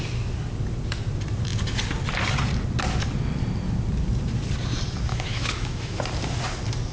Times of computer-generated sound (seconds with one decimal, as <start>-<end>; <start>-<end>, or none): 5.1-6.0